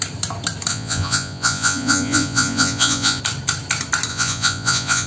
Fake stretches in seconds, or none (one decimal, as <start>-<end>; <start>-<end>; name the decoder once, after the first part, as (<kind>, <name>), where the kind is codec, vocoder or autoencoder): 0.7-3.2 (vocoder, Vocos); 4.1-5.1